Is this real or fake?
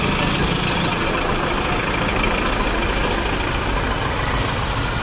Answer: real